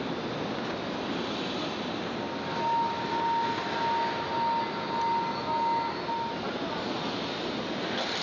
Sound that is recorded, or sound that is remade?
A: recorded